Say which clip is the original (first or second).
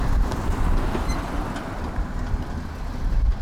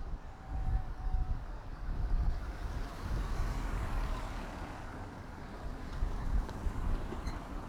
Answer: first